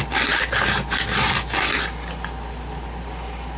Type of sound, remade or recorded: recorded